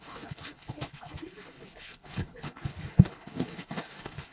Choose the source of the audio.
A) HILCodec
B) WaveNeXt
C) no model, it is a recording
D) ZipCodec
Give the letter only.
A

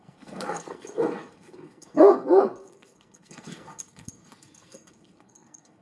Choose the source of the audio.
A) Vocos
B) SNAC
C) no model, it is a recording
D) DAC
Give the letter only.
B